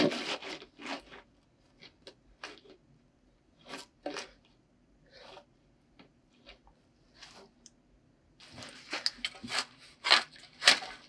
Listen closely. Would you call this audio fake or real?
real